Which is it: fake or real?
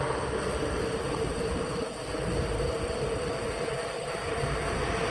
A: fake